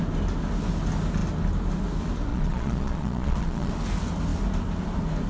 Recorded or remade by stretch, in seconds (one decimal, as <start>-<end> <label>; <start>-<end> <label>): 0.0-2.3 recorded; 2.3-3.7 remade; 3.7-5.3 recorded